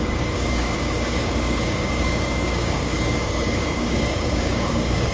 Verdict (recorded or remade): remade